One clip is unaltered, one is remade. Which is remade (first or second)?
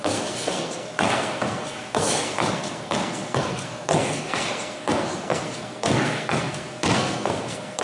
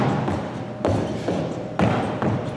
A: first